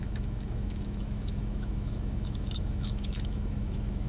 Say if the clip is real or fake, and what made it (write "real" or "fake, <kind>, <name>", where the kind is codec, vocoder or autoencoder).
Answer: fake, autoencoder, DAC-VAE